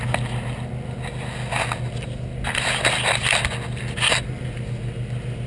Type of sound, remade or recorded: recorded